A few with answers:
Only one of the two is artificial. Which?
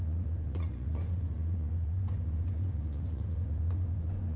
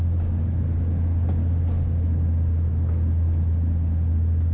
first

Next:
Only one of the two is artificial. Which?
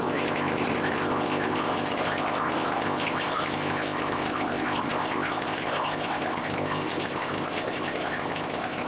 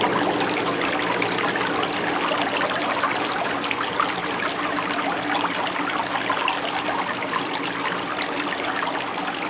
first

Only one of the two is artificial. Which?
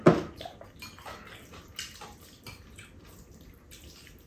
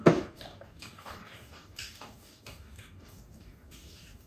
second